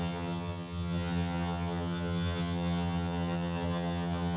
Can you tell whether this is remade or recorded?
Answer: remade